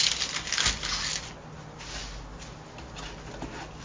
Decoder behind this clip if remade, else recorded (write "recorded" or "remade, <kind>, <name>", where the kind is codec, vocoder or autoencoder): recorded